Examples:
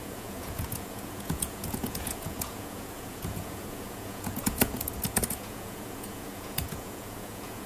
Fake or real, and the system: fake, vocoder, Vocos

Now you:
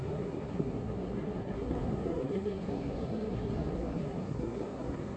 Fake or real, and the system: fake, codec, SNAC